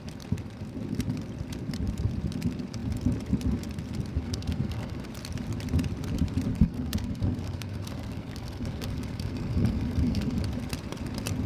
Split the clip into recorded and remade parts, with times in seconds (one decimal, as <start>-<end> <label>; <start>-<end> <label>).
0.0-4.2 recorded; 4.2-5.1 remade; 5.1-6.5 recorded; 6.5-10.4 remade; 10.4-11.5 recorded